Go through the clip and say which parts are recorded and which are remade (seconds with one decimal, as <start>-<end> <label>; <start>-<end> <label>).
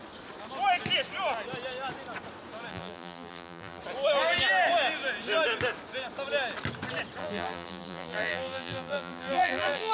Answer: 0.0-2.7 recorded; 2.7-3.8 remade; 3.8-7.2 recorded; 7.2-9.9 remade